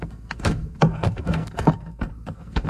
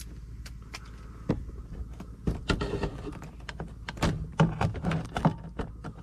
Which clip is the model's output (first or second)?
first